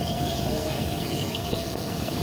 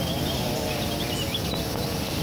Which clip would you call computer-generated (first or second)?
first